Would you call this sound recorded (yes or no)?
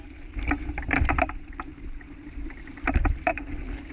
yes